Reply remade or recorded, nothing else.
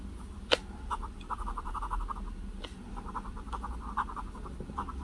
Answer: recorded